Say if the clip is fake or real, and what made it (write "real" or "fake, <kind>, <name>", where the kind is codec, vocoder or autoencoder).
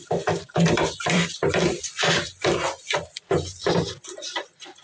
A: fake, vocoder, BigVGAN v2